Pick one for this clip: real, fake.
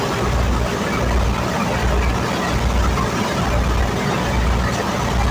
real